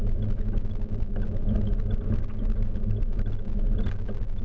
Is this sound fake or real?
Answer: real